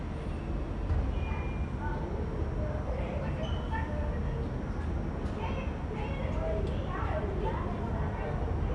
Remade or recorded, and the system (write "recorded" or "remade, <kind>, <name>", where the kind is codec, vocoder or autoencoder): recorded